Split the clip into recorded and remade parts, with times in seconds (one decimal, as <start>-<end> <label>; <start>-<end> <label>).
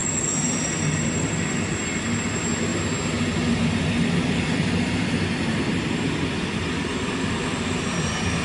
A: 0.0-8.4 recorded